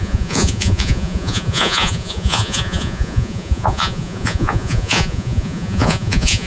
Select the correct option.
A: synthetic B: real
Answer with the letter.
A